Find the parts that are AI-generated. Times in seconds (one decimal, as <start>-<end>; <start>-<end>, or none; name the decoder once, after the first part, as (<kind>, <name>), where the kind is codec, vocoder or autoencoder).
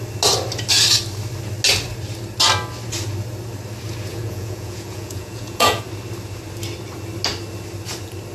4.1-5.8 (vocoder, Vocos)